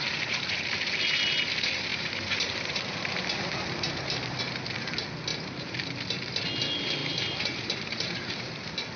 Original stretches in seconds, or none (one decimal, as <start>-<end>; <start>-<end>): 0.0-1.9; 4.4-5.3; 5.9-7.0